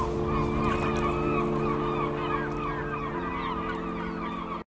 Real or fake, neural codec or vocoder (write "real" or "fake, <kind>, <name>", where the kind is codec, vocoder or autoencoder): real